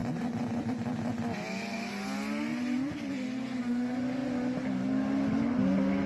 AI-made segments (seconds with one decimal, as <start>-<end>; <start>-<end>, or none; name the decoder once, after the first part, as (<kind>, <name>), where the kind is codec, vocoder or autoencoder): 2.5-3.1 (vocoder, BigVGAN v2)